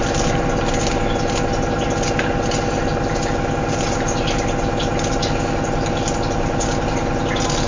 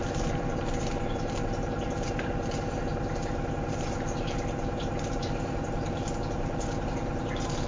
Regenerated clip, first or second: second